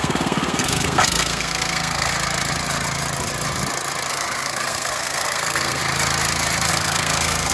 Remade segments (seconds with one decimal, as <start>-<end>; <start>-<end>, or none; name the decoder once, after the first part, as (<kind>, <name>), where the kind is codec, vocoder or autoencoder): 0.0-2.1 (codec, SNAC); 4.1-5.8; 6.7-7.5